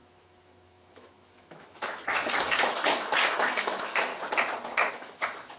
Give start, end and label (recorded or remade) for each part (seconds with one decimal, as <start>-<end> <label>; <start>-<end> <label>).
0.0-4.1 remade; 4.1-4.9 recorded; 4.9-5.6 remade